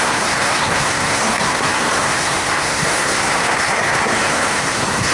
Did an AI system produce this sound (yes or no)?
yes